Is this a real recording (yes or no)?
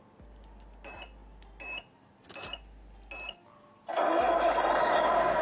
yes